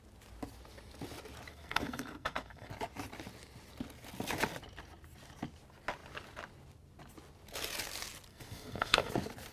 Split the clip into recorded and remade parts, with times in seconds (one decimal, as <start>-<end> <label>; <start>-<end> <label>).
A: 0.0-1.5 recorded; 1.5-2.7 remade; 2.7-8.3 recorded; 8.3-9.1 remade; 9.1-9.5 recorded